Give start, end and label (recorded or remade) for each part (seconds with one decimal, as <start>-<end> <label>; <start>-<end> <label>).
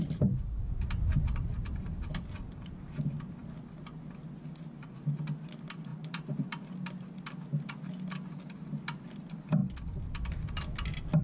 0.0-1.1 recorded; 1.1-2.7 remade; 2.7-5.9 recorded; 5.9-6.6 remade; 6.6-11.2 recorded